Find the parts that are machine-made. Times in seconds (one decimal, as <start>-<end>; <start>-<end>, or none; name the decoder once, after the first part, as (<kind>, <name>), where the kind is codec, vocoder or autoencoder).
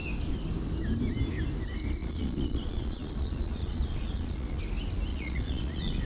2.0-4.6 (vocoder, Vocos); 5.1-6.0